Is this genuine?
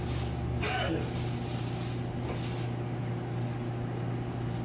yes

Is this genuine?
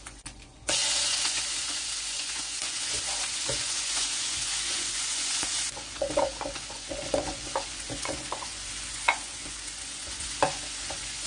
no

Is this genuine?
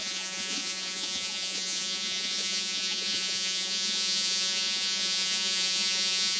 no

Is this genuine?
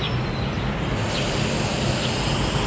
yes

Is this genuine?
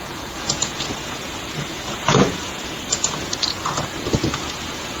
no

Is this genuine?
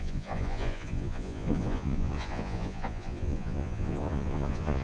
no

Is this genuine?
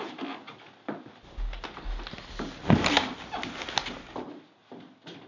yes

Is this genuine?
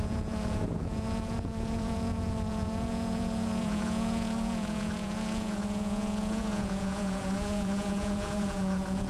no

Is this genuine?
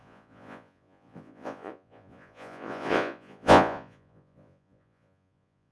no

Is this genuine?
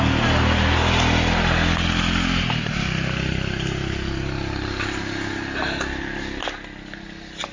yes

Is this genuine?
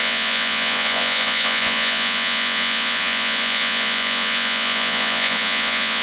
no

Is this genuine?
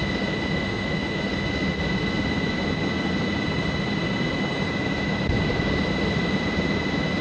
yes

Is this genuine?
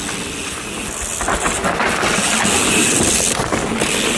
yes